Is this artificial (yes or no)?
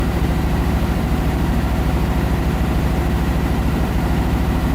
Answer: yes